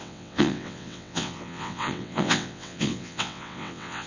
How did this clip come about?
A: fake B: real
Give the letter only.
A